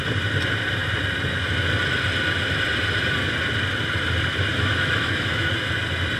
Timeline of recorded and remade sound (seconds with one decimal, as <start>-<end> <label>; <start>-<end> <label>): 0.0-4.5 recorded; 4.5-5.5 remade; 5.5-6.2 recorded